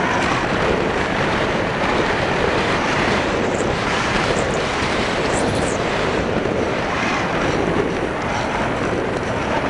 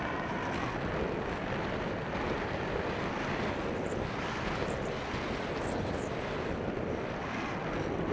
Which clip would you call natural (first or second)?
second